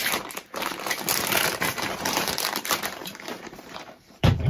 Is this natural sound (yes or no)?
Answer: no